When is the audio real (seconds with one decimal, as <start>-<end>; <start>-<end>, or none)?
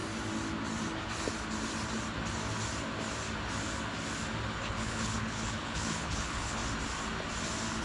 0.0-4.7; 6.6-7.8